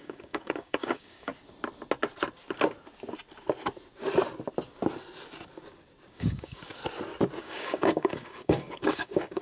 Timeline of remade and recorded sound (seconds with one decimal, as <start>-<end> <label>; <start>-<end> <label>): 0.0-1.3 remade; 1.3-6.1 recorded; 6.1-6.8 remade; 6.8-7.4 recorded; 7.4-9.4 remade